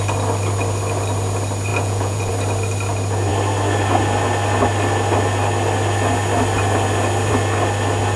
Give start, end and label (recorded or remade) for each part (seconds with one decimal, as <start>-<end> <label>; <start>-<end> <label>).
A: 0.0-1.7 recorded; 1.7-2.3 remade; 2.3-8.2 recorded

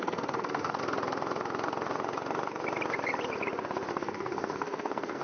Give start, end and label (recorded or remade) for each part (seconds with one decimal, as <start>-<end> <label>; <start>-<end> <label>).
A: 0.0-0.8 remade; 0.8-3.9 recorded; 3.9-5.2 remade

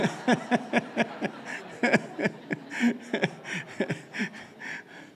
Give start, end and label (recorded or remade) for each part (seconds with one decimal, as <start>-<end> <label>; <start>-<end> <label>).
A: 0.0-5.1 recorded

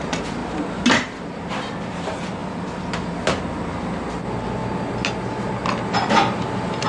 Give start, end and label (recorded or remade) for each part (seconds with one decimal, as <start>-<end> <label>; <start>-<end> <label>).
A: 0.0-6.9 recorded